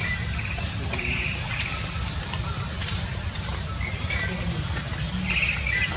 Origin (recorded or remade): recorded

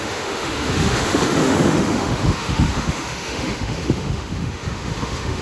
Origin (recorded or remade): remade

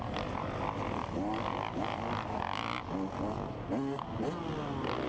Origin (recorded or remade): recorded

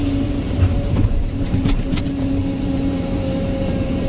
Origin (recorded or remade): remade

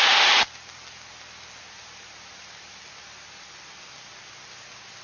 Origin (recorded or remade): recorded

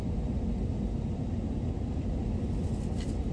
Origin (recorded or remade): recorded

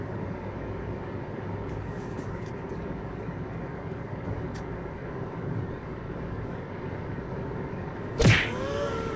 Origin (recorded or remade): remade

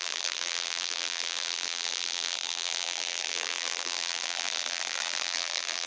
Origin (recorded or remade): remade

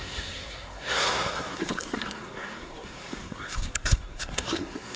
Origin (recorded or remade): remade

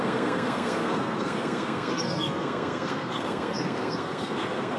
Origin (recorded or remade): remade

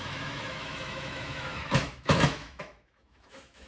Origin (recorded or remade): remade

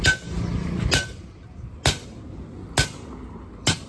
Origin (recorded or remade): recorded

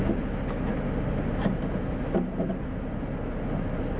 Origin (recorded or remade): recorded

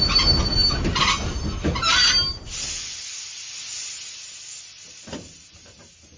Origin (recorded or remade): recorded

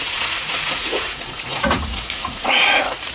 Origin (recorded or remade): remade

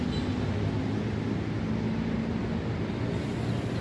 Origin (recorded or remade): recorded